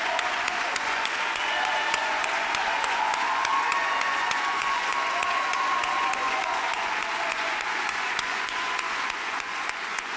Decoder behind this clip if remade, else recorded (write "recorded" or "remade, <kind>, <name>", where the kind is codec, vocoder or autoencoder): remade, vocoder, Vocos